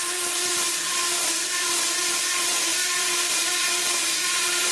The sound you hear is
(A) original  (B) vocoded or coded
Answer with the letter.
B